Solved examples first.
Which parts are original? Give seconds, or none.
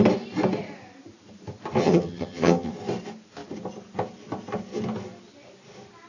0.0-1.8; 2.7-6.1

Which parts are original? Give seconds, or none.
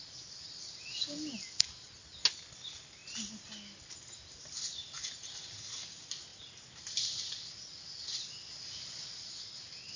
0.0-10.0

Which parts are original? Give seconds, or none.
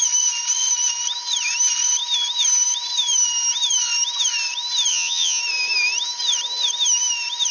0.0-4.9; 5.4-7.5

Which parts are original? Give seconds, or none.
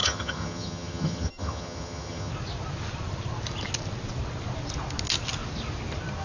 2.3-6.2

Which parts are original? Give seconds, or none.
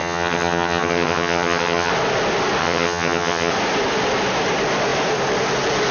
1.9-2.6; 3.5-5.9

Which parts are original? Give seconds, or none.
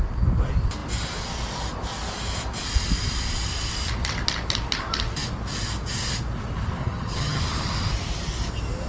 0.0-6.8; 7.4-8.9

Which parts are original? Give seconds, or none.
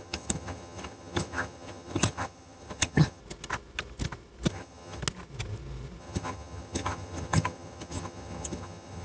3.2-4.5; 5.0-6.0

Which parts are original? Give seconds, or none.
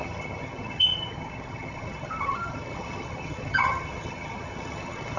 none